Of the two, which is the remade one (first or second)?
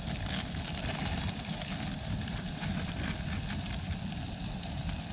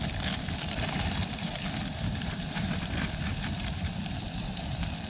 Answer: second